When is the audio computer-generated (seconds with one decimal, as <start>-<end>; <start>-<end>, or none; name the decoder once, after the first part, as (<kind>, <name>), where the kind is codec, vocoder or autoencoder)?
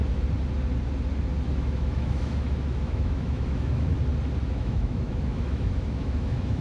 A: 1.5-3.9 (autoencoder, DAC-VAE); 4.5-6.6